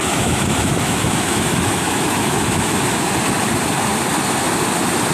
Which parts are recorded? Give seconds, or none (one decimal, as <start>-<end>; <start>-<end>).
3.1-5.1